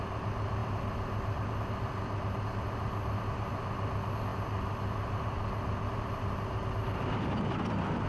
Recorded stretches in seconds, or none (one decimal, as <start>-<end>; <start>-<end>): 0.0-8.1